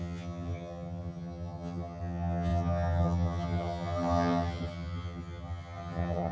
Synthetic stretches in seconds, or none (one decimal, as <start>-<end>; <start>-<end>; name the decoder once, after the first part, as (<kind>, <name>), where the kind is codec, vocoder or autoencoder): 0.0-6.3 (vocoder, HiFi-GAN)

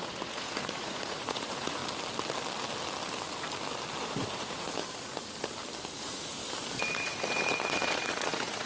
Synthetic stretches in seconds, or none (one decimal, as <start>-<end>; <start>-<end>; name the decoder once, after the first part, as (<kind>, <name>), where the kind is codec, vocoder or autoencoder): 0.0-1.8 (vocoder, Vocos); 4.0-4.8; 6.0-6.4; 6.9-8.7

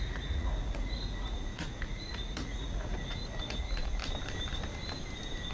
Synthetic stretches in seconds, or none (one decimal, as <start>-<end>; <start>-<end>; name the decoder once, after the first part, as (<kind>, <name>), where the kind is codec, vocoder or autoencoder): 0.0-4.0 (vocoder, Vocos)

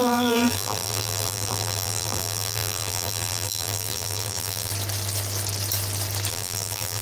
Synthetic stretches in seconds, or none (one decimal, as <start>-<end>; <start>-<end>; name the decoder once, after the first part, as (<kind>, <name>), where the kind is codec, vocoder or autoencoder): 0.0-4.7 (vocoder, BigVGAN v2); 6.3-7.0

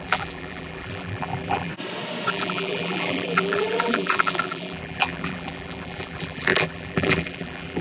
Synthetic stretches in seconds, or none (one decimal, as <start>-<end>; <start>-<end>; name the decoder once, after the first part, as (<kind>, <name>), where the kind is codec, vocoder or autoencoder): 0.0-1.7 (vocoder, BigVGAN v2); 2.3-7.8

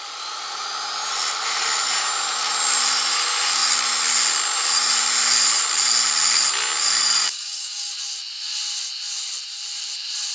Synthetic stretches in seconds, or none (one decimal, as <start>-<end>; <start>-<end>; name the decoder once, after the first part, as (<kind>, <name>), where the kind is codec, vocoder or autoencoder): 7.2-7.9 (codec, DAC)

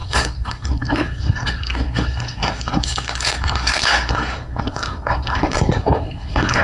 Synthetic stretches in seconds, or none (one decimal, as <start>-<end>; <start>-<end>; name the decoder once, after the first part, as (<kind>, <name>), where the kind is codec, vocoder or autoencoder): 0.0-6.6 (codec, SNAC)

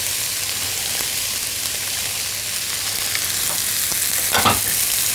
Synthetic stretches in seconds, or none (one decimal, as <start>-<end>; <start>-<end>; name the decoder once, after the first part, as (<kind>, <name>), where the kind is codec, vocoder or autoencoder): 0.0-2.0 (vocoder, BigVGAN v2)